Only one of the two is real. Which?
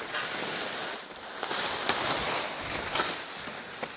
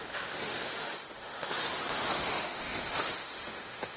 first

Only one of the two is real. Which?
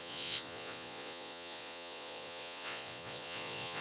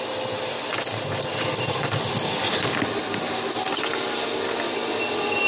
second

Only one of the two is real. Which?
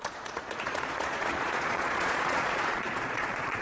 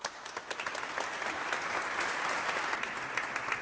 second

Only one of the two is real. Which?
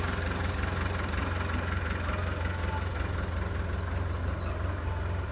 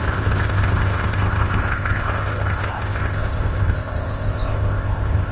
first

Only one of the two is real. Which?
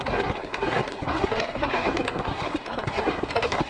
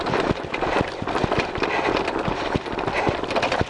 second